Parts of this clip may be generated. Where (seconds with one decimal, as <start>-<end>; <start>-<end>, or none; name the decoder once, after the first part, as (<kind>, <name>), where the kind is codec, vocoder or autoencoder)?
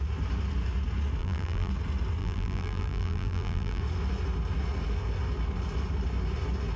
1.2-1.7 (vocoder, BigVGAN v2); 2.2-3.8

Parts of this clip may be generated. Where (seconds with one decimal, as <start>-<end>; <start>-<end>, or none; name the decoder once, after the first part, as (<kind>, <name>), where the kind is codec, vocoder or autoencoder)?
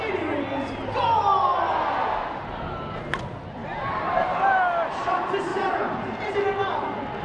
3.6-4.6 (vocoder, BigVGAN v2); 5.5-6.3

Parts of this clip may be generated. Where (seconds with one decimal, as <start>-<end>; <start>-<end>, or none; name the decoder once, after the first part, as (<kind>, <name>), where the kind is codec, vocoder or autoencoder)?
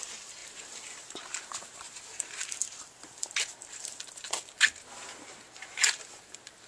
0.0-6.7 (vocoder, BigVGAN v2)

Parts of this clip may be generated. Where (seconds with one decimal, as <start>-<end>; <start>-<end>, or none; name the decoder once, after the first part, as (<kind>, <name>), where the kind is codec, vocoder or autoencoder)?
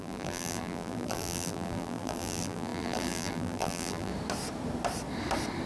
0.0-4.1 (vocoder, BigVGAN v2)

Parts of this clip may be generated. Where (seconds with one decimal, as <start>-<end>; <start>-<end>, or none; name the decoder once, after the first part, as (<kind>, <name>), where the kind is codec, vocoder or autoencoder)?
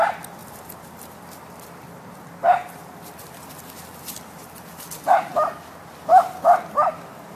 0.4-4.8 (vocoder, BigVGAN v2)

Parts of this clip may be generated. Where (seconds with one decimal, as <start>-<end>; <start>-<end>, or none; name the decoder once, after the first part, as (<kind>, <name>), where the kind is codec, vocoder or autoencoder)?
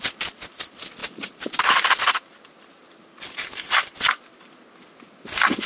1.0-4.4 (vocoder, BigVGAN v2)